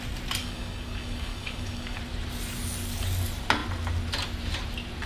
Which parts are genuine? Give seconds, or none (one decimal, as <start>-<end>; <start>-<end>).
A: 0.0-0.4; 2.0-5.1

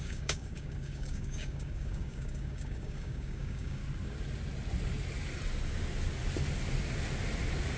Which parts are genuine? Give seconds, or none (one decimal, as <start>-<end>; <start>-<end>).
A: 3.8-7.8

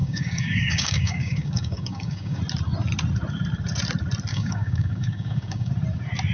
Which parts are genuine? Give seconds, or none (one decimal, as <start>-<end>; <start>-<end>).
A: 2.4-4.3; 5.7-6.3

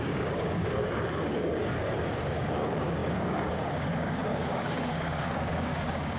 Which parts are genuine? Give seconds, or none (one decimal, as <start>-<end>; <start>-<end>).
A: 1.6-2.4

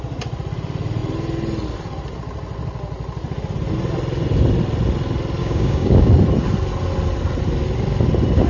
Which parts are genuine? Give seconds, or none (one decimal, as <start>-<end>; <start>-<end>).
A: 0.0-5.4; 6.1-8.5

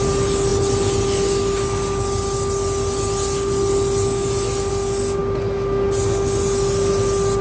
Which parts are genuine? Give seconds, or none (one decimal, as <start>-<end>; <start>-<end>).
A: 0.0-7.4